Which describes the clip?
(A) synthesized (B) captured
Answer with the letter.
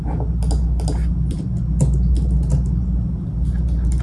B